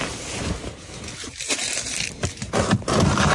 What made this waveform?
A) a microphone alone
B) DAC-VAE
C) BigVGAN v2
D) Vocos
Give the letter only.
C